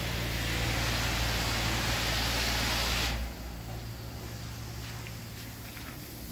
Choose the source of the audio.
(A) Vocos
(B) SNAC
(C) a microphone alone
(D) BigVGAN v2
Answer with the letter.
C